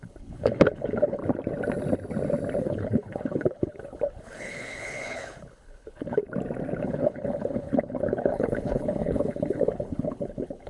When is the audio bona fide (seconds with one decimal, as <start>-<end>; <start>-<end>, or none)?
1.2-2.6; 6.2-6.8